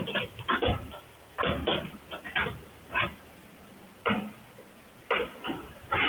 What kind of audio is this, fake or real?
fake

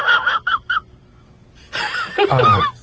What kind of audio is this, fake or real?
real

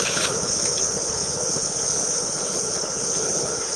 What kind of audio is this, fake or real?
fake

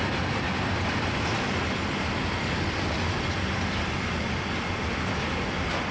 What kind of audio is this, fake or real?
fake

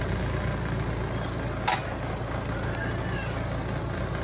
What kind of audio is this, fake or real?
real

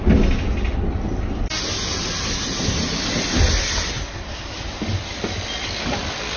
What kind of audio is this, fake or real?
real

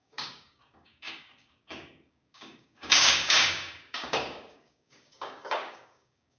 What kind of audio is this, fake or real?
fake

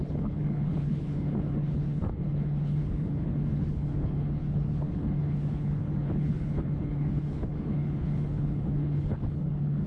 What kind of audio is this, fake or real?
fake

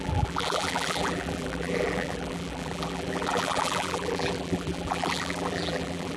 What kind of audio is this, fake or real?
fake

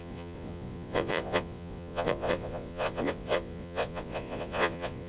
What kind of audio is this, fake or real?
fake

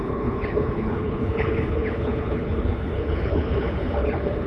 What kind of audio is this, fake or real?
fake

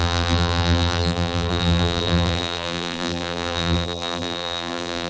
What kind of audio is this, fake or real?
fake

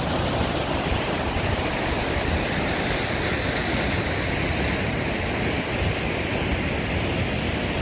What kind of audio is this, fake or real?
real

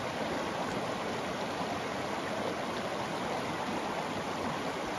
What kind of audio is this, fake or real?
real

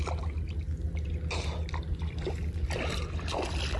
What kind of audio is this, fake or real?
real